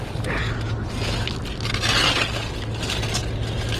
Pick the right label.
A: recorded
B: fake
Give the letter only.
A